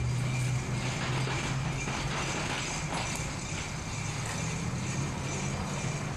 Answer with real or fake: real